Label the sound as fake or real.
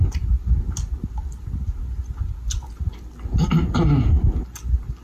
real